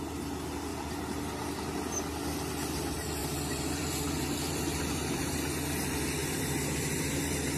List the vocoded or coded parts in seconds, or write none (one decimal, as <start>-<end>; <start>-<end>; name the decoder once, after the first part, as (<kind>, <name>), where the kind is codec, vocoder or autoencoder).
0.7-1.2 (vocoder, BigVGAN v2); 3.2-5.3; 6.2-7.6